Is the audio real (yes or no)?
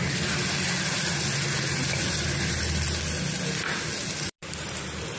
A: yes